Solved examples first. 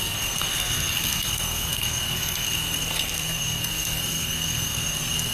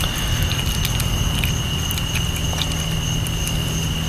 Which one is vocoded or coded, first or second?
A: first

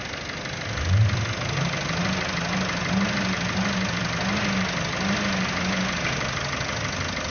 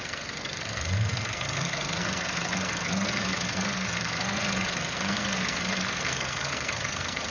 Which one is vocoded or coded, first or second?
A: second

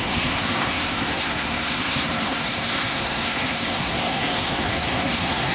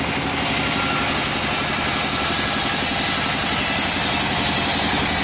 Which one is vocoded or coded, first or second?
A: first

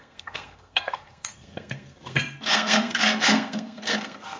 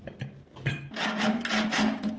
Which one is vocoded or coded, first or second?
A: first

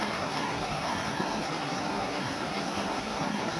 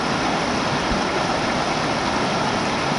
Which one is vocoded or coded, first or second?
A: first